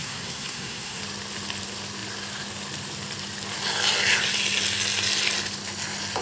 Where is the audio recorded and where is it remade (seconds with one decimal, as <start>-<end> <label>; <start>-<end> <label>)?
0.0-1.0 remade; 1.0-6.2 recorded